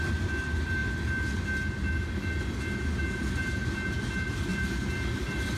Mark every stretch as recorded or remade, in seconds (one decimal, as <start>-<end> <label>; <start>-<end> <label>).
0.0-4.5 recorded; 4.5-5.6 remade